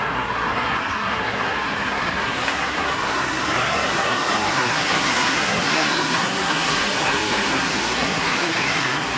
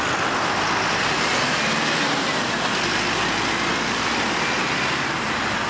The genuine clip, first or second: second